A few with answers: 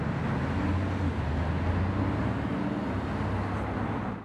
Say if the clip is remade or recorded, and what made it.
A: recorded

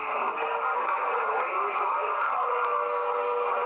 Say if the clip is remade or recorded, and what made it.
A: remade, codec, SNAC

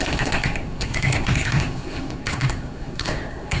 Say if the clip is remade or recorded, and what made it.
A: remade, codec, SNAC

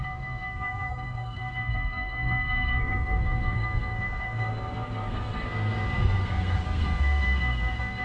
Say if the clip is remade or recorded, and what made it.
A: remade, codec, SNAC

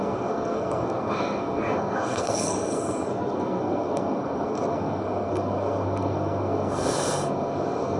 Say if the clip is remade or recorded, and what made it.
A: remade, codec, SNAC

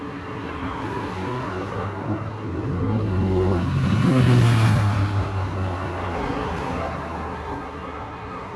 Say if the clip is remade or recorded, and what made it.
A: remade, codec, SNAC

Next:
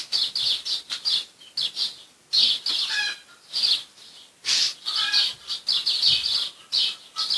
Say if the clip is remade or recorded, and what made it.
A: recorded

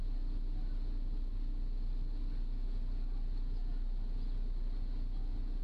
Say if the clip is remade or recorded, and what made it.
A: recorded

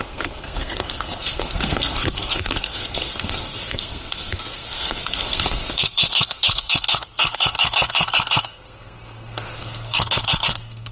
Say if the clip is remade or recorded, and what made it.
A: remade, codec, SNAC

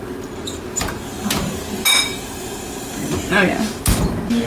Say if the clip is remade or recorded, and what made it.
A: recorded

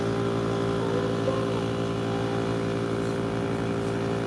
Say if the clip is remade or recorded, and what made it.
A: recorded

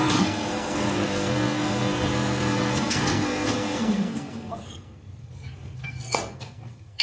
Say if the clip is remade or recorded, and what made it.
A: remade, codec, SNAC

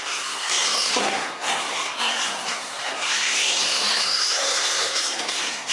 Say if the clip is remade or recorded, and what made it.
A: remade, codec, SNAC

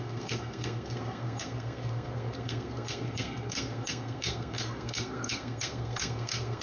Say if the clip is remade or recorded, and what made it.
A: remade, codec, SNAC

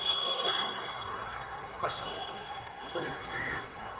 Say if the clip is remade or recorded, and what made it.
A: remade, codec, SNAC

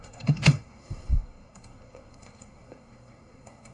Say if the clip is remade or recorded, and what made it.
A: remade, codec, SNAC